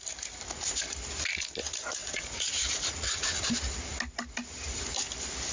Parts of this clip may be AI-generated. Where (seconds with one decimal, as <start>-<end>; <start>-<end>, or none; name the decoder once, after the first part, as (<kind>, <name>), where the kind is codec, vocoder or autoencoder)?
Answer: 2.0-3.4 (vocoder, Vocos)

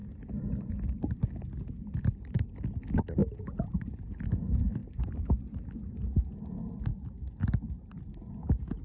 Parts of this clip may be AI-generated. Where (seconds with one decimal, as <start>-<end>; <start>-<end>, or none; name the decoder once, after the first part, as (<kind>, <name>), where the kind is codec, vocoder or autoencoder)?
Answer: none

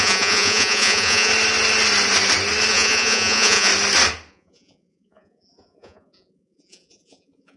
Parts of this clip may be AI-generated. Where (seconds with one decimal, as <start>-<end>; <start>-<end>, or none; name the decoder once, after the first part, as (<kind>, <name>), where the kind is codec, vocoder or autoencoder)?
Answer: 0.0-1.3 (vocoder, Vocos); 2.7-3.7; 4.3-7.6

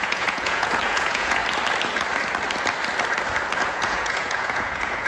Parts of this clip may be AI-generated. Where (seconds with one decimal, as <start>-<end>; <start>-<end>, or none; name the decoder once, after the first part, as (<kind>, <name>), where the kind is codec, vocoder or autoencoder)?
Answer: 0.0-1.4 (vocoder, Vocos); 3.7-5.1

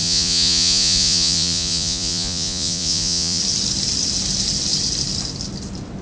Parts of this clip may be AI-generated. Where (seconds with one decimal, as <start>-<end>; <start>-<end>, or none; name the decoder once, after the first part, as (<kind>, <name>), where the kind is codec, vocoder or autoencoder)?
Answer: 0.0-3.4 (vocoder, Vocos)

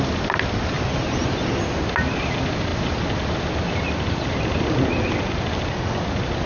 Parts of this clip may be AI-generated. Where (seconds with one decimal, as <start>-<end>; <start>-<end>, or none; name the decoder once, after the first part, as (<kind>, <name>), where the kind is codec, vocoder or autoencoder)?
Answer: none

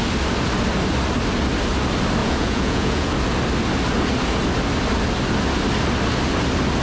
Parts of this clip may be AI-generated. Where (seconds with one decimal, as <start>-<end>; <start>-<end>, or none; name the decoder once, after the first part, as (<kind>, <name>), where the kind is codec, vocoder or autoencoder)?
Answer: 2.2-3.1 (vocoder, Vocos)